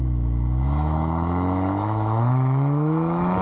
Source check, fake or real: fake